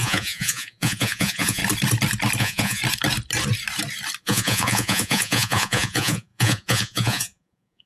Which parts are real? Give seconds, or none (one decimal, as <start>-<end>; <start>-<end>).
1.6-2.4; 2.8-4.2

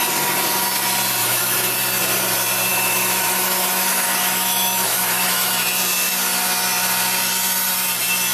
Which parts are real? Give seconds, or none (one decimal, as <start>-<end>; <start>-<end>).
0.0-1.2; 1.7-2.7; 5.5-8.3

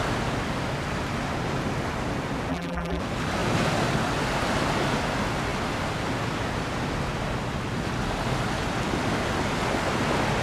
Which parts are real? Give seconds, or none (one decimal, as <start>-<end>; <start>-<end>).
0.0-2.5; 3.0-10.4

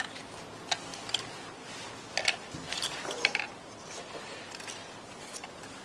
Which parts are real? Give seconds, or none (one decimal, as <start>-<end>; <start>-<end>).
0.0-5.8

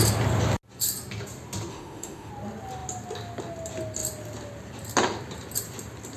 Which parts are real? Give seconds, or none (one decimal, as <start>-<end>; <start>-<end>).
0.0-1.7; 2.3-6.2

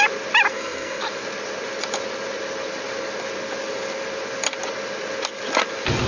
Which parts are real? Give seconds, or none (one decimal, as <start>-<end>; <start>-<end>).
0.0-0.5; 1.0-6.1

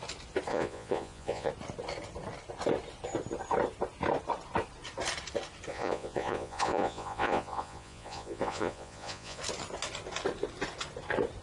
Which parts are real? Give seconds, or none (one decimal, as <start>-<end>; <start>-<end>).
0.0-0.5; 1.5-5.7; 9.4-11.4